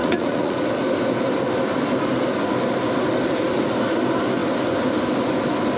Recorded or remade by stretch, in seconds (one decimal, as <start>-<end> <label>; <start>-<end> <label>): 0.0-0.6 remade; 0.6-5.8 recorded